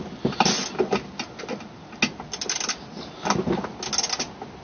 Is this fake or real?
real